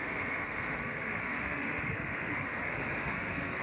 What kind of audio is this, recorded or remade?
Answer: remade